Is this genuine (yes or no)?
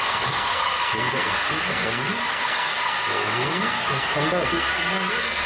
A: no